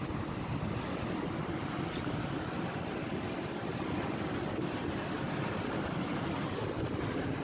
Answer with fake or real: real